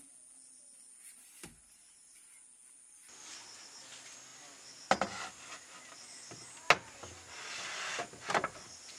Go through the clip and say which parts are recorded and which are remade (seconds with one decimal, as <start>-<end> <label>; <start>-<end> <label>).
0.0-9.0 recorded